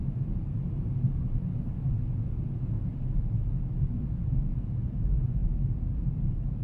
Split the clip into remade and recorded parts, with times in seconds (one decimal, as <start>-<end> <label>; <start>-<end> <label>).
0.0-1.9 recorded; 1.9-2.9 remade; 2.9-4.1 recorded; 4.1-5.4 remade; 5.4-6.6 recorded